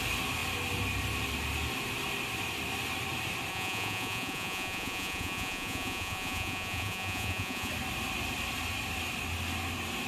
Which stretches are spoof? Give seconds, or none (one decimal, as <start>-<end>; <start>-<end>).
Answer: 3.5-7.7